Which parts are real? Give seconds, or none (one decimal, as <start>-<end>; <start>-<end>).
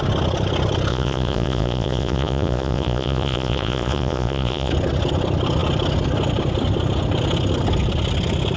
0.0-0.9; 4.7-8.6